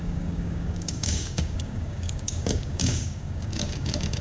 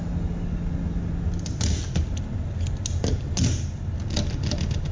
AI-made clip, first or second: first